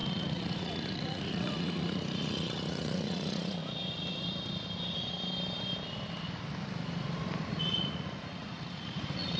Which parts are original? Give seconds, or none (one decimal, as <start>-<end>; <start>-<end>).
3.6-7.5